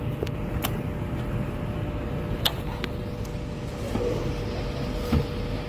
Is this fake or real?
real